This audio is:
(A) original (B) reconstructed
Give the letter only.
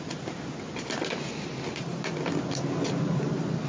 A